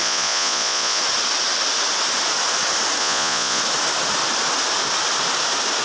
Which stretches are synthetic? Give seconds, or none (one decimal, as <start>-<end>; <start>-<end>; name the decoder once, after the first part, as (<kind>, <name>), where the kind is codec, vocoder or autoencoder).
0.0-1.0 (vocoder, Vocos); 3.0-3.6